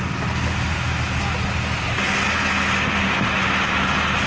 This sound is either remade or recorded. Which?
recorded